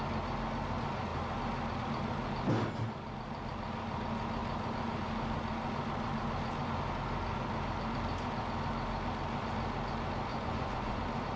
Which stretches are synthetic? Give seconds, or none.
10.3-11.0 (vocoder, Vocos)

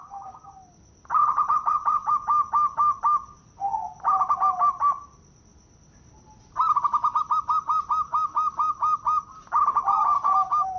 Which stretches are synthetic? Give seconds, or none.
1.2-2.1 (vocoder, WaveNeXt)

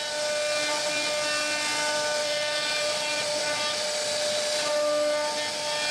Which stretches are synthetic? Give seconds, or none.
2.2-3.4 (vocoder, BigVGAN v2)

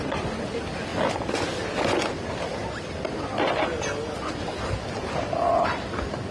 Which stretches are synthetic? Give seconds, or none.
none

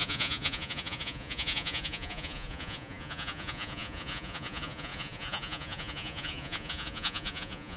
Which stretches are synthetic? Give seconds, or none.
0.0-7.8 (vocoder, Vocos)

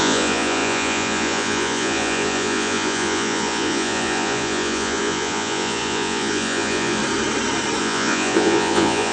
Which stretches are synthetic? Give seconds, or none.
0.0-7.0 (vocoder, Vocos); 7.8-9.1